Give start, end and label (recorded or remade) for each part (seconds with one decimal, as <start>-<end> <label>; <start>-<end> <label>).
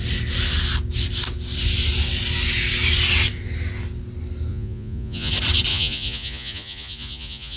0.0-4.5 recorded; 4.5-5.3 remade; 5.3-5.7 recorded; 5.7-7.6 remade